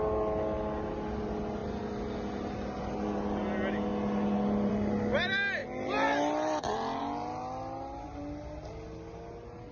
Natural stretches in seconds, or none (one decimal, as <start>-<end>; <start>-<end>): 0.0-9.7